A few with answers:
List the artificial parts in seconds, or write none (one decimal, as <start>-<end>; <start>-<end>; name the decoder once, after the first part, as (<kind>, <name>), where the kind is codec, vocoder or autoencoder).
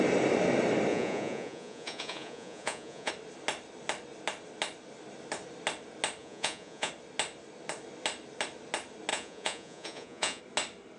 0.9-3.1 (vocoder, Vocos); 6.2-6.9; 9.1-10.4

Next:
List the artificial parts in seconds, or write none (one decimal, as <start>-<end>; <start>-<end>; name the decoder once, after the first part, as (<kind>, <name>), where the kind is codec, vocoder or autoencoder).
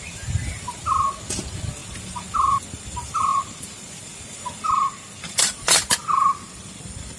none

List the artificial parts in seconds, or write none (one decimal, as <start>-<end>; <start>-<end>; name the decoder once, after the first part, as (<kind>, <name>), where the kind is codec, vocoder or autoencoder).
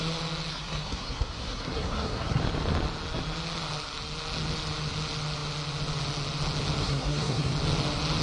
0.5-2.4 (codec, SNAC); 6.8-7.5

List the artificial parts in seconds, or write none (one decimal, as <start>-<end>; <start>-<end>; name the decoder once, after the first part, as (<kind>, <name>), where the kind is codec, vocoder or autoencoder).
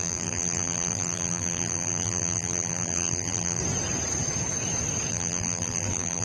0.0-3.6 (vocoder, BigVGAN v2); 5.1-6.2